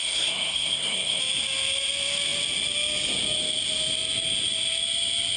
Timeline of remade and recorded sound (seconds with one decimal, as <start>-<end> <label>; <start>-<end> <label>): 0.0-1.2 remade; 1.2-5.4 recorded